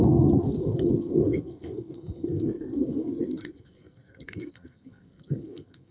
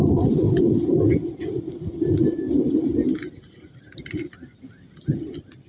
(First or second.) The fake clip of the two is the first